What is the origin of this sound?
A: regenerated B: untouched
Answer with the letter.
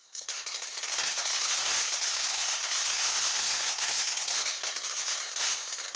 A